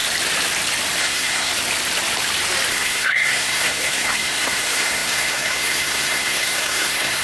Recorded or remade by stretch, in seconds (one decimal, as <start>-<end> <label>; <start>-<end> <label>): 0.0-1.0 recorded; 1.0-1.5 remade; 1.5-2.7 recorded; 2.7-7.2 remade